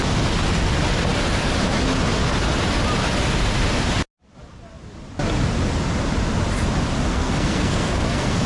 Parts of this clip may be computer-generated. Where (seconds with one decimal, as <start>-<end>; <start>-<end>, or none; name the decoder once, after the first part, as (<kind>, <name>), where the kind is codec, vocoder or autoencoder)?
7.1-8.5 (codec, SNAC)